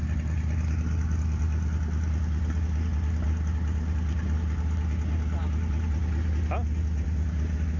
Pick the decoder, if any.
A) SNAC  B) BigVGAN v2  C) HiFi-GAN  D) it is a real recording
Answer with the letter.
D